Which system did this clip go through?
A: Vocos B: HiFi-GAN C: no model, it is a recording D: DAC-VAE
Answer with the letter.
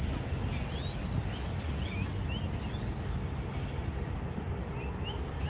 C